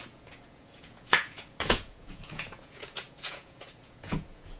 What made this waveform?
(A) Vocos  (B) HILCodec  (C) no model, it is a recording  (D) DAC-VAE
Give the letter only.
A